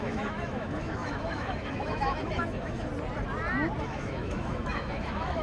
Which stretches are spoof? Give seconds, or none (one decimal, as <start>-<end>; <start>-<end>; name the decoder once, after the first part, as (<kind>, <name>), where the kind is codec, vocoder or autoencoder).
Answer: 0.0-2.9 (autoencoder, DAC-VAE); 3.8-5.4